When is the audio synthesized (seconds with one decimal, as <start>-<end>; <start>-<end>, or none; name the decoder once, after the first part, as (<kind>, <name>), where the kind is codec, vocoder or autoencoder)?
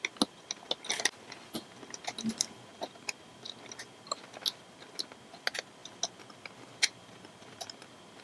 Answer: none